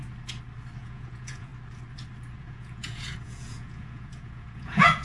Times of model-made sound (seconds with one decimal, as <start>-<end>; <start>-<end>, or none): 0.8-1.5; 2.4-5.0